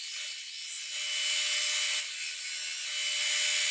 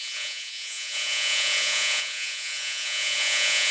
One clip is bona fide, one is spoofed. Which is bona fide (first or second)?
first